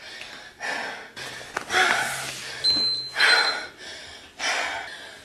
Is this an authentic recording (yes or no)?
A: yes